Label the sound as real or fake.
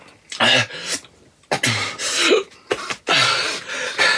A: real